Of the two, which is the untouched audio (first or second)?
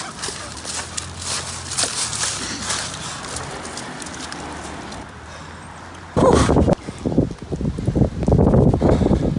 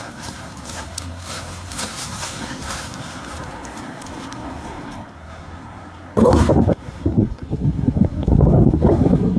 first